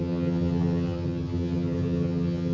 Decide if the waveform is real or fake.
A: fake